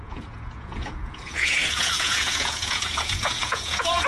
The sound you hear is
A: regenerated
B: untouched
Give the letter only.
A